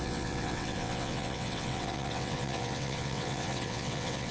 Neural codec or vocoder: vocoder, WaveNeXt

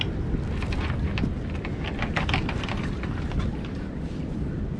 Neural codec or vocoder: none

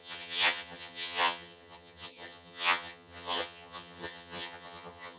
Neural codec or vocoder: vocoder, HiFi-GAN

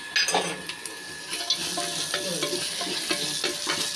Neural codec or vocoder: none